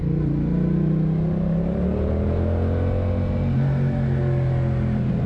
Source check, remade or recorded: recorded